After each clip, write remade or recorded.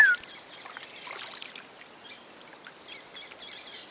recorded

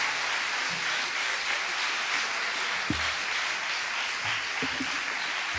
recorded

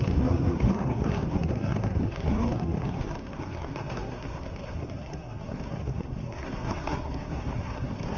remade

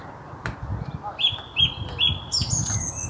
recorded